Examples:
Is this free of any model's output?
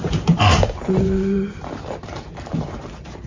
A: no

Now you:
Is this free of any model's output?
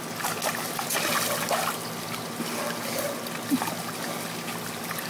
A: yes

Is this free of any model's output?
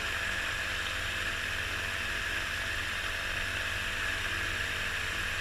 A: yes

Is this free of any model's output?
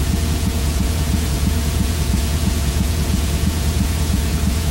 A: no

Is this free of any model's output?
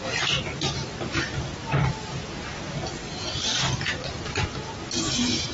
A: yes